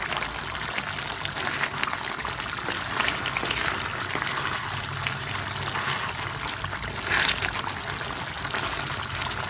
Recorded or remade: recorded